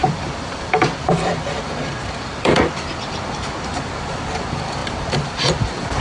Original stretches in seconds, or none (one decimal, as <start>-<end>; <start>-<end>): none